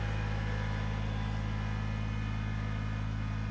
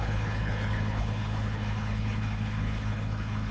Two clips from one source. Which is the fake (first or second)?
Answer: second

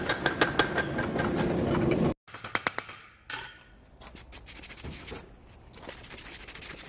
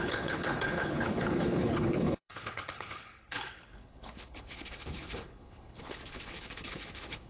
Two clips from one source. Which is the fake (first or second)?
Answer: second